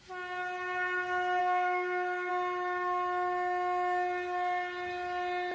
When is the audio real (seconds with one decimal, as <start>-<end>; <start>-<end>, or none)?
0.0-1.4; 2.3-5.5